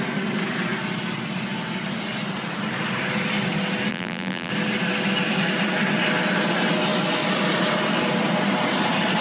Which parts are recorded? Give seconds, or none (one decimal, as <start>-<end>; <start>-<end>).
0.0-3.9; 4.5-9.2